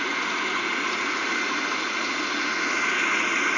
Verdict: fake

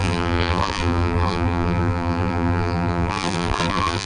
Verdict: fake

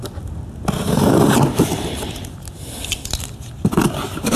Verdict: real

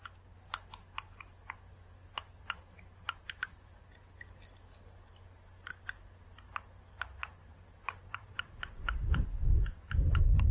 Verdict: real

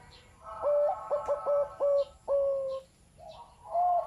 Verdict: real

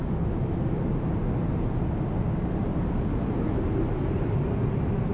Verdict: real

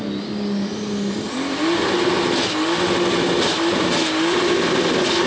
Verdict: real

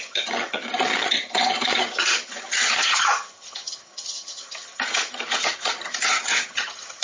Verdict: fake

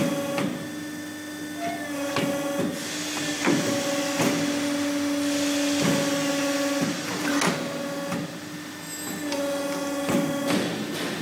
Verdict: real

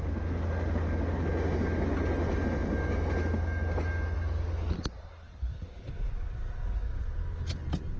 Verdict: real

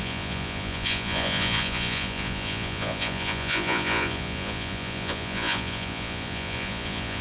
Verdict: fake